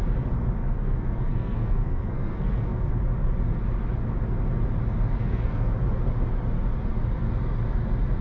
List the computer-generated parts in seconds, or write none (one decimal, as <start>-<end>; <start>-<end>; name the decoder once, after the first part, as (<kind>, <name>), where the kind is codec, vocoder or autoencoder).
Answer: 0.6-2.9 (codec, SNAC); 5.2-5.7